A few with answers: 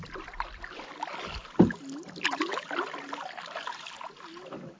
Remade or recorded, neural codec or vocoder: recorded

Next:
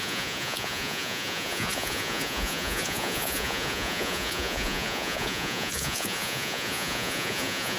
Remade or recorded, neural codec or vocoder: remade, vocoder, Vocos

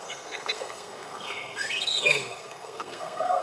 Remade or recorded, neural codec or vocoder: remade, codec, SNAC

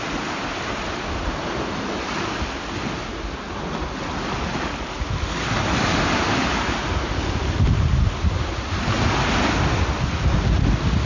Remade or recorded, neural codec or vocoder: recorded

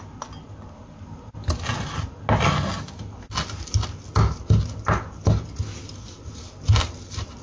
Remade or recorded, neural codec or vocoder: recorded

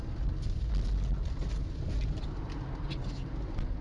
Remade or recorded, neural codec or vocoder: recorded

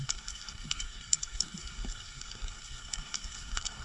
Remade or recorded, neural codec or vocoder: remade, codec, SNAC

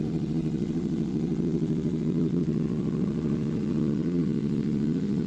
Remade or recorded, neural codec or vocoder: remade, vocoder, Vocos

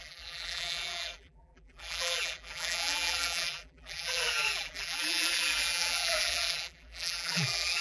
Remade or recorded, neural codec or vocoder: remade, vocoder, BigVGAN v2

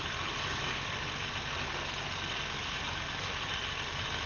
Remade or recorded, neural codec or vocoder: remade, vocoder, BigVGAN v2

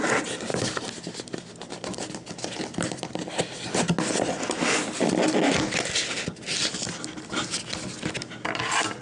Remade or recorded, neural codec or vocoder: recorded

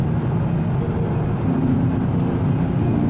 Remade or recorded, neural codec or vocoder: recorded